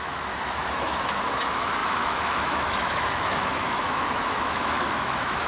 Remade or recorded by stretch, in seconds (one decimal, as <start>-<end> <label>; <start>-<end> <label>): 0.0-5.5 remade

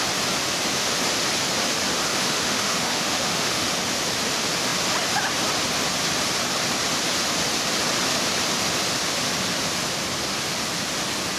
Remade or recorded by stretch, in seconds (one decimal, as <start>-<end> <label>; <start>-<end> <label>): 0.0-2.1 recorded; 2.1-3.7 remade; 3.7-11.4 recorded

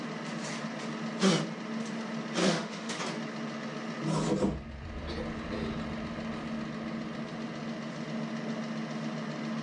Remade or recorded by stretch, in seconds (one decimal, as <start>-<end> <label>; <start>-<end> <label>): 0.0-2.4 recorded; 2.4-3.0 remade; 3.0-9.6 recorded